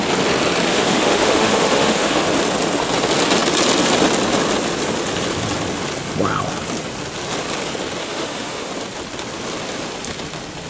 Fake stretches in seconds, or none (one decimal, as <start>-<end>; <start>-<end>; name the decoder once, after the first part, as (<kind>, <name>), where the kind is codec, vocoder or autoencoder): 0.7-2.2 (autoencoder, DAC-VAE); 8.0-8.7